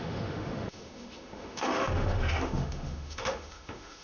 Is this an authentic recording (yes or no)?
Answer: no